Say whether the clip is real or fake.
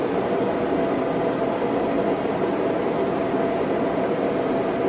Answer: real